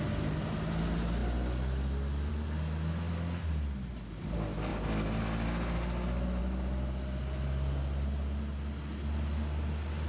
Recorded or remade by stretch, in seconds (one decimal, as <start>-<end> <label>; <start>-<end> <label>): 0.0-10.1 recorded